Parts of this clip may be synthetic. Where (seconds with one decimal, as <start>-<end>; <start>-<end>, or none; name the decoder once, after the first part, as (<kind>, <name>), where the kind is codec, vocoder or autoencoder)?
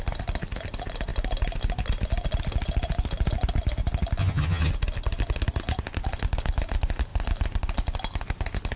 4.2-4.7 (vocoder, HiFi-GAN)